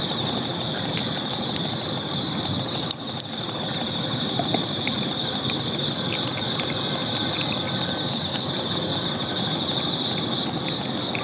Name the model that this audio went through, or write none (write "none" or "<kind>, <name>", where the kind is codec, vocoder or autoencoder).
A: none